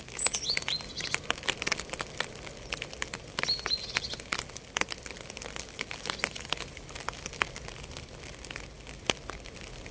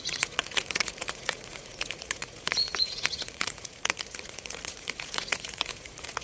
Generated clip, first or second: second